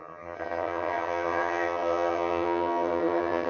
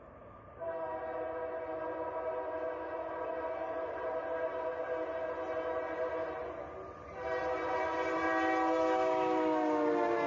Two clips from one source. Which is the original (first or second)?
second